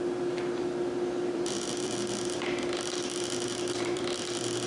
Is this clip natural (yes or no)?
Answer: no